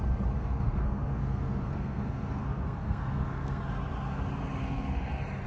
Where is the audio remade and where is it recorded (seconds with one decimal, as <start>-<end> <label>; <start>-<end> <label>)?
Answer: 0.0-0.4 recorded; 0.4-3.6 remade; 3.6-4.6 recorded; 4.6-5.1 remade; 5.1-5.5 recorded